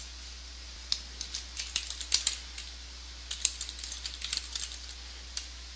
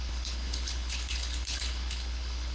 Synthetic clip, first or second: second